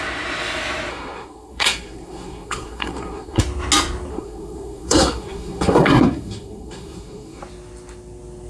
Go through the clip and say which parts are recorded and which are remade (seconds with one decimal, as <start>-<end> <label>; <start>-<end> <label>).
0.0-0.9 recorded; 0.9-3.4 remade; 3.4-4.1 recorded; 4.1-7.4 remade; 7.4-8.5 recorded